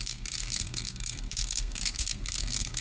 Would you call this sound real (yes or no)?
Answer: no